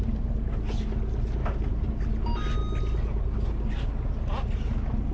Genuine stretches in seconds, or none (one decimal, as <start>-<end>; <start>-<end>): 0.0-5.1